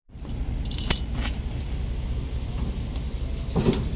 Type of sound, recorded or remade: recorded